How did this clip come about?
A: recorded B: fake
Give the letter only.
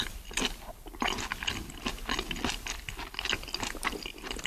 A